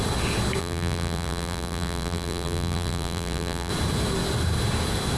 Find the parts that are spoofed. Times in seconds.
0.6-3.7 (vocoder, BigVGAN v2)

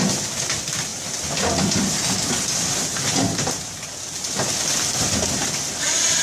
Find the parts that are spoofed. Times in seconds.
none

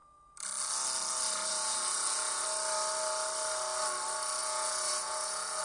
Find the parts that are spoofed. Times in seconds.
1.5-2.4 (vocoder, Vocos); 4.4-5.6

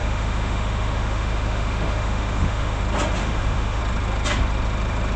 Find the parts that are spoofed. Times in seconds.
0.0-2.8 (autoencoder, DAC-VAE); 3.2-3.8

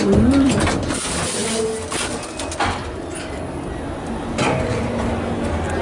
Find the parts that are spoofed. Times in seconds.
none

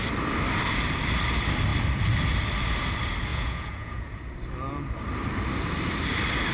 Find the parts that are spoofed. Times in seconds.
3.3-4.2 (vocoder, Vocos)